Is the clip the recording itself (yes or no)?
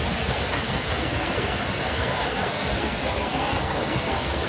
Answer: no